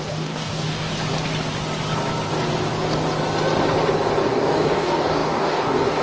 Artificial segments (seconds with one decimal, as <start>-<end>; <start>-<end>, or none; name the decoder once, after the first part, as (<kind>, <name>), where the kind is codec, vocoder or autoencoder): 0.0-0.9 (codec, DAC); 4.2-6.0